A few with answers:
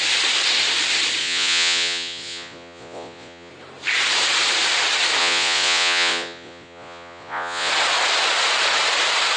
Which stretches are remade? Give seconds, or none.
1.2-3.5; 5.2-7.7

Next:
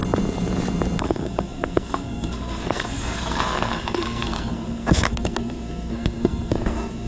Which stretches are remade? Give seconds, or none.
1.0-7.1

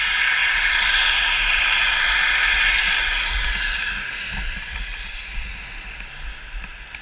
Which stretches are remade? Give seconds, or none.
0.4-1.8; 4.9-5.6

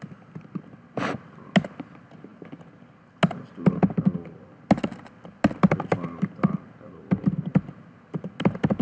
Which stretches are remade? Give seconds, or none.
none

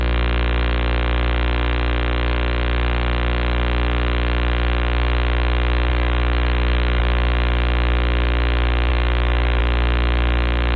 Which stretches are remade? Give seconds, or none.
5.9-7.0; 8.9-9.6

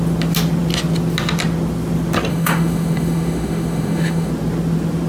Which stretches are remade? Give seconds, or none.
2.3-4.3